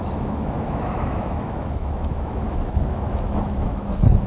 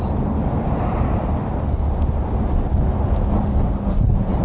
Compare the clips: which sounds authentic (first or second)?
second